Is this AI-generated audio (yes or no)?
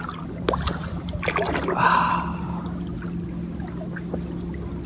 no